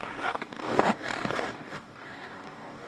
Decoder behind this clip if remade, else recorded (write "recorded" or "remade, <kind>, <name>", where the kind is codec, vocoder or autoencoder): remade, codec, DAC